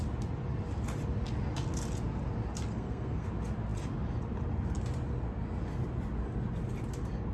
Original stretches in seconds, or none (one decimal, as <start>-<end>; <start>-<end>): 0.0-2.7; 3.3-7.3